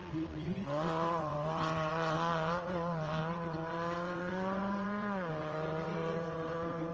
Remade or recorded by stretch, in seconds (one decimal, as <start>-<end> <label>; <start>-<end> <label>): 0.0-6.9 remade